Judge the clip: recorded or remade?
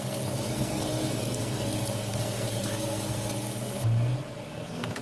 remade